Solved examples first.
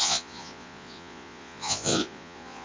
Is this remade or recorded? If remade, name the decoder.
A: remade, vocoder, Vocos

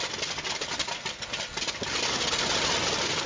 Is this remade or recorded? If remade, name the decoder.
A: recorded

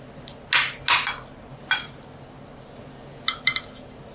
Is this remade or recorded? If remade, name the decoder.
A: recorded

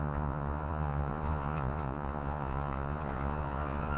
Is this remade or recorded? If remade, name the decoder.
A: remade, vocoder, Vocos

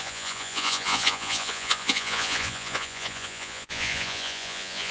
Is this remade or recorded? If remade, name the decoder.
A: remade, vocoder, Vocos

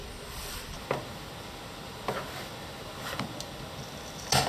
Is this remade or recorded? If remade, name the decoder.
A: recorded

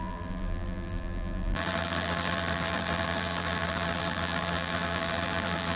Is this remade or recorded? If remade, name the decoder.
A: remade, vocoder, BigVGAN v2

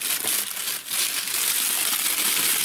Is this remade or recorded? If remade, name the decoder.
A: recorded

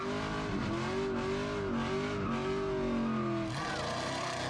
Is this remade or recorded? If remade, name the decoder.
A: recorded